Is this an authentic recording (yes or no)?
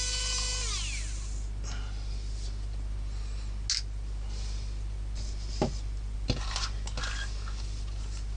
yes